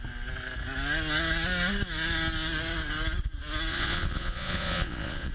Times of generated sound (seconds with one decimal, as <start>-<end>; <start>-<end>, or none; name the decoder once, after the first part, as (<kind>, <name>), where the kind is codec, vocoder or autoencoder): 3.7-5.3 (vocoder, Vocos)